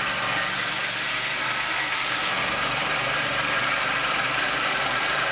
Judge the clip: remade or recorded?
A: remade